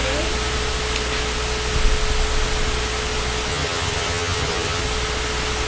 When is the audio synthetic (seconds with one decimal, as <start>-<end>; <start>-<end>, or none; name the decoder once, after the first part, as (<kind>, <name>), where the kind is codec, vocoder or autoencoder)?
3.5-4.8 (vocoder, HiFi-GAN)